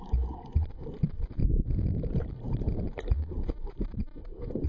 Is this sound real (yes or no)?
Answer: no